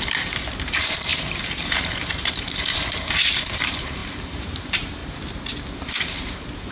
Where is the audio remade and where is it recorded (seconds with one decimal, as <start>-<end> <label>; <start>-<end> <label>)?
0.0-5.0 remade; 5.0-6.0 recorded; 6.0-6.7 remade